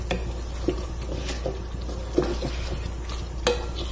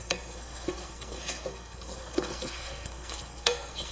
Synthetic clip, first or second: second